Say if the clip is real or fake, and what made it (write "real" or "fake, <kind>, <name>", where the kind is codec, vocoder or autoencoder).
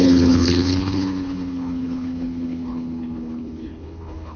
fake, codec, HILCodec